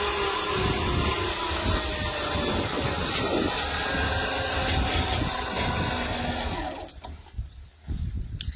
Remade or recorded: recorded